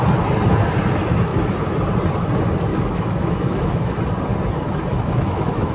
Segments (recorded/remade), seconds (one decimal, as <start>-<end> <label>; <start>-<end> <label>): 0.0-2.7 recorded; 2.7-4.0 remade; 4.0-4.9 recorded; 4.9-5.7 remade